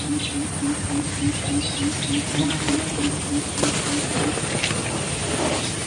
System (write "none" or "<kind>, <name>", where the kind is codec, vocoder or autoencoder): none